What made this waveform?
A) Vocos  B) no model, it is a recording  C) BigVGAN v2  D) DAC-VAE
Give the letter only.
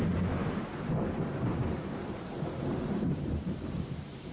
C